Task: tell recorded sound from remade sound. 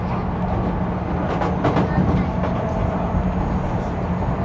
recorded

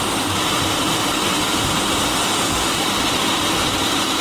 remade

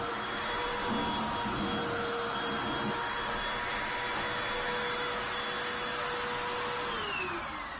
recorded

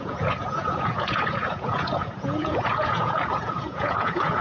remade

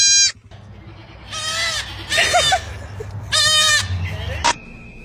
recorded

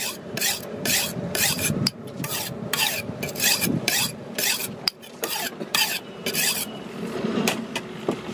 remade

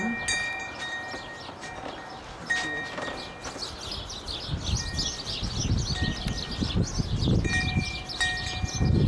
recorded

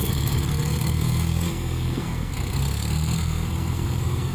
remade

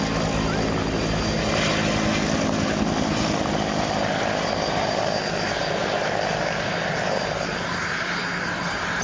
recorded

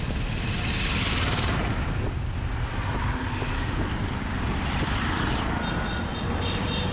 recorded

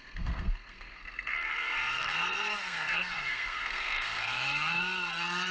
remade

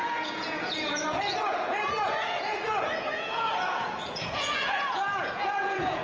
remade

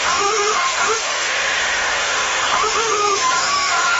remade